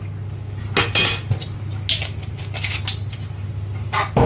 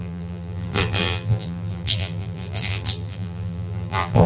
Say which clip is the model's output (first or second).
second